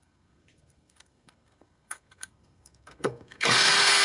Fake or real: fake